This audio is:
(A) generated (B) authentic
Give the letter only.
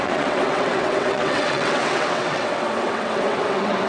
A